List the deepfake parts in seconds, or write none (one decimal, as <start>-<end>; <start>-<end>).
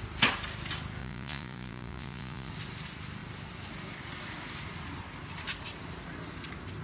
1.0-2.5